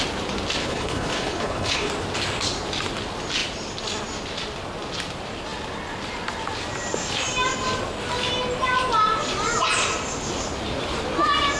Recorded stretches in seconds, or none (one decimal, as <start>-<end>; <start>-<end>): 0.0-0.6; 1.9-11.6

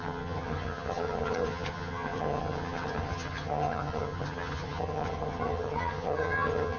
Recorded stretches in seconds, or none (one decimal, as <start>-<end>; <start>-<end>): none

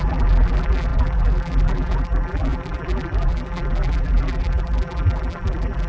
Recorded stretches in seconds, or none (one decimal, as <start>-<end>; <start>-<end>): none

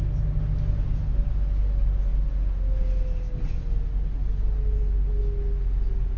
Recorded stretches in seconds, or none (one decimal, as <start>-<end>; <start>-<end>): 0.0-6.2

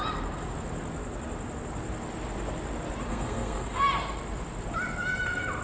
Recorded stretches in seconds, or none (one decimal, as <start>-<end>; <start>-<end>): 0.0-3.1; 3.8-5.6

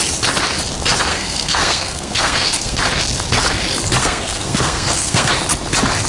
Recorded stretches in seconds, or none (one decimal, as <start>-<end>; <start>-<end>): 0.0-1.1; 2.8-4.0; 5.3-6.1

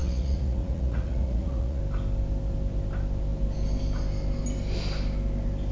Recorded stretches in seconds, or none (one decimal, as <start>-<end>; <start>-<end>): 1.8-5.7